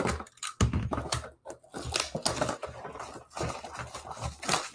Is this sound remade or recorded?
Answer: recorded